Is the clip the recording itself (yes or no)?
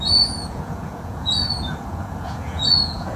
no